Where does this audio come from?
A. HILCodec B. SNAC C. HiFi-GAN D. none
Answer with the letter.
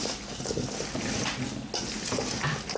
D